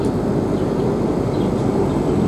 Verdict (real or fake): real